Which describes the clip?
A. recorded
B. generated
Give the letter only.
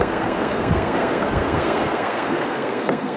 B